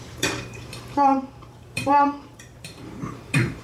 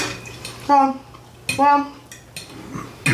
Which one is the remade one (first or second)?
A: first